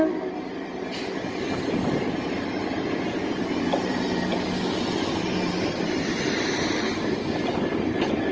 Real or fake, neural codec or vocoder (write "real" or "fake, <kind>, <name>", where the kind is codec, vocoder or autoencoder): fake, vocoder, BigVGAN v2